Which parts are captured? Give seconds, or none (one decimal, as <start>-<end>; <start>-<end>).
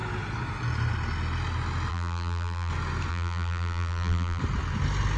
0.0-1.9; 2.7-3.1; 4.4-5.2